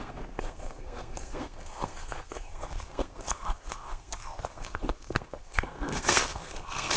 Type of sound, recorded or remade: remade